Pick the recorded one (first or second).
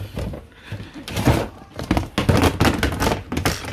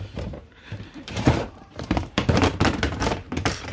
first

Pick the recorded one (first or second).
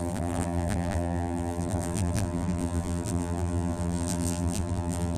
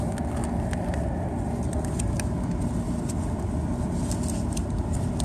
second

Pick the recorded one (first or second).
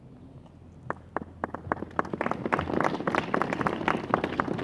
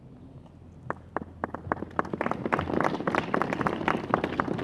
first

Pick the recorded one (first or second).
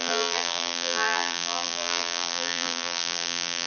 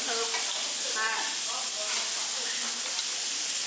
second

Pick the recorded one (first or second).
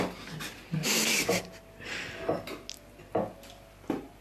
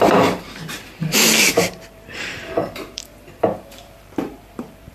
first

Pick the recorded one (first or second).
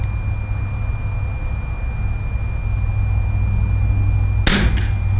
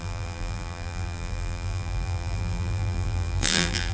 first